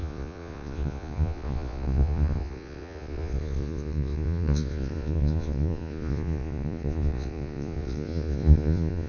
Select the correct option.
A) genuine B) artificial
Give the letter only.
B